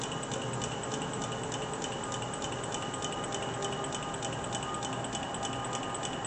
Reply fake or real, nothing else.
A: real